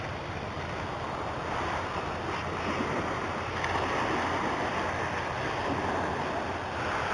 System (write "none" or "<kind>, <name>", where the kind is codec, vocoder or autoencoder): none